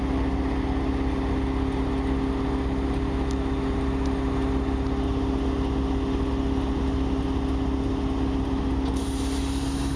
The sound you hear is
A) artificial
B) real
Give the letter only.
B